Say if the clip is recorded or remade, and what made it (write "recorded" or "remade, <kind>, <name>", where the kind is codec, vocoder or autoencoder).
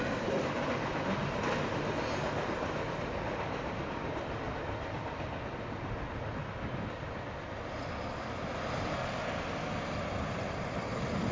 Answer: recorded